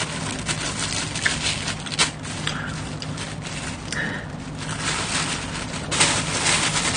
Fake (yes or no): no